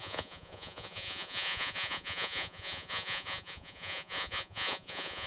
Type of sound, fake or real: fake